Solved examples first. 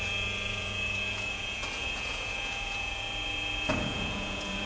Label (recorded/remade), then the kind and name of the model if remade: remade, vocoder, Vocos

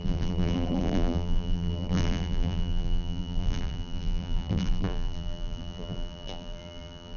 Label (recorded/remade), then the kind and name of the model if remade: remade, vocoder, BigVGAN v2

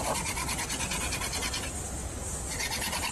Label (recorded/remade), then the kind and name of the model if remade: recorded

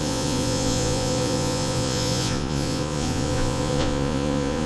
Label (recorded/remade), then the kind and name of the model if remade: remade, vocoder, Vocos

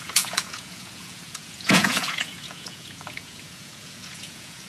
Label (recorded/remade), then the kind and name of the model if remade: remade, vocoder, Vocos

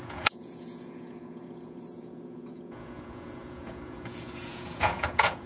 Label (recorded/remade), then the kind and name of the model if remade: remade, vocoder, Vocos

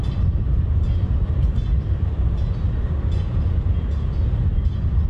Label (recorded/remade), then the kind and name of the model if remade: recorded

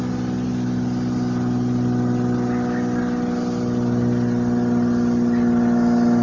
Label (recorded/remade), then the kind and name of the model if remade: recorded